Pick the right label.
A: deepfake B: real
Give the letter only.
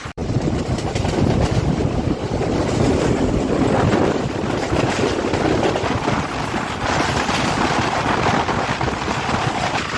A